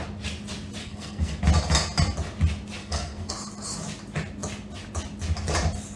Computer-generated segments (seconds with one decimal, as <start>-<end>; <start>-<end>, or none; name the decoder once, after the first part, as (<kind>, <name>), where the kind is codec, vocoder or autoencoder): 0.8-1.4 (codec, SNAC); 2.8-3.3

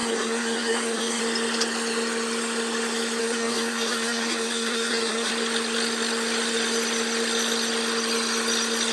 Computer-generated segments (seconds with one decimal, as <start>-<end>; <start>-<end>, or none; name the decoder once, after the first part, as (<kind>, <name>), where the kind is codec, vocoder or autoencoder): 0.0-1.2 (codec, SNAC); 3.2-5.3

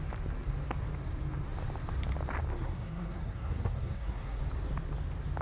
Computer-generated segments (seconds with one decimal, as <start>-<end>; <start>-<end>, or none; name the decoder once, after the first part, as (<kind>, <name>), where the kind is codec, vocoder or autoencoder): 2.5-4.4 (codec, SNAC)

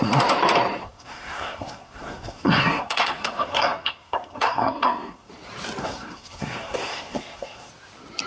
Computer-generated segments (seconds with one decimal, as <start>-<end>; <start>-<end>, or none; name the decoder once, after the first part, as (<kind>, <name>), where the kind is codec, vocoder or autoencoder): 0.8-5.3 (codec, SNAC); 5.8-7.7

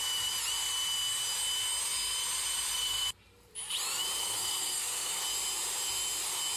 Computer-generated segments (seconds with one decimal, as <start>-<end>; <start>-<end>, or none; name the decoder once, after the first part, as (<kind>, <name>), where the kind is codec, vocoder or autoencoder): 4.2-5.2 (codec, SNAC)